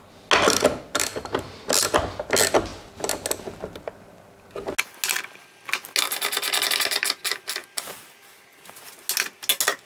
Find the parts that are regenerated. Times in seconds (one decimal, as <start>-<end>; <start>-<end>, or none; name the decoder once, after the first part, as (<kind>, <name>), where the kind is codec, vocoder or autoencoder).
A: 1.1-1.6 (vocoder, BigVGAN v2)